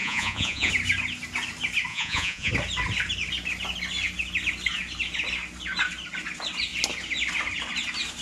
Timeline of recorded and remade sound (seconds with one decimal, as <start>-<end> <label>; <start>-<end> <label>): 0.0-0.7 remade; 0.7-1.9 recorded; 1.9-2.5 remade; 2.5-8.2 recorded